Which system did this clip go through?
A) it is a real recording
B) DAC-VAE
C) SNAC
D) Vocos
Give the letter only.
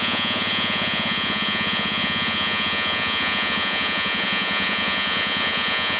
D